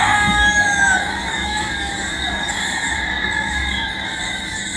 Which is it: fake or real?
fake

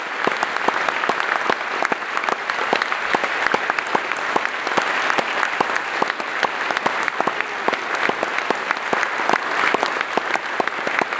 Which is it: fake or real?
real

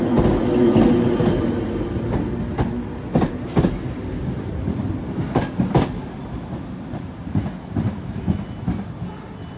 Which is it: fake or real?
real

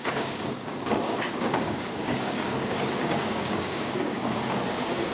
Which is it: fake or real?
fake